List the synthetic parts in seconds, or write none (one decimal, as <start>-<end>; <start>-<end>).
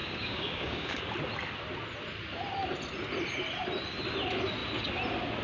0.0-1.0